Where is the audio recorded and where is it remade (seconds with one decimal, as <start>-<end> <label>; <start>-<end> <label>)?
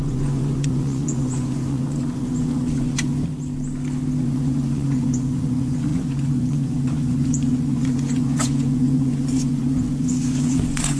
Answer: 0.0-3.1 remade; 3.1-4.2 recorded; 4.2-11.0 remade